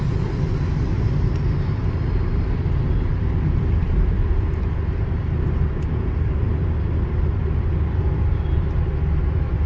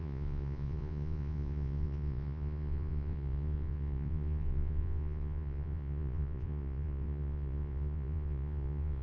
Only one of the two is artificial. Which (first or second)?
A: second